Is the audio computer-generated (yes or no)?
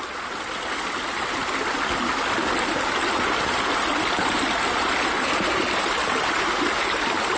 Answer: no